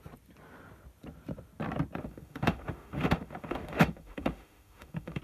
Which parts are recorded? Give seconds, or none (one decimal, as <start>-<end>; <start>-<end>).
0.0-2.0